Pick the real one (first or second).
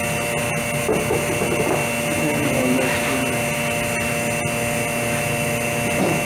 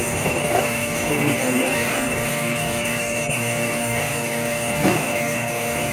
first